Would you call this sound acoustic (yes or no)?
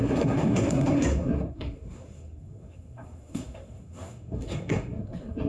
no